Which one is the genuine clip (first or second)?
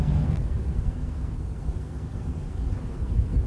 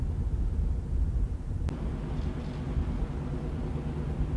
second